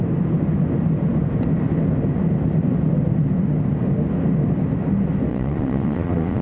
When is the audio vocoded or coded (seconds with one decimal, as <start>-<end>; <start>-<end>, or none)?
5.3-6.4